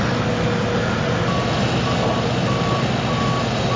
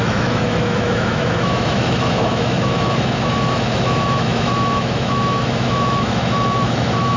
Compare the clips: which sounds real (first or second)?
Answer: first